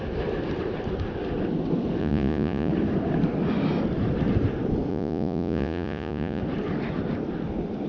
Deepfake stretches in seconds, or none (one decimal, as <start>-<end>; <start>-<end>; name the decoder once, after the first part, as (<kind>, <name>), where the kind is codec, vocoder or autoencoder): 2.0-2.7 (vocoder, Vocos); 4.9-6.4